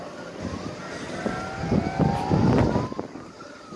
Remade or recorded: recorded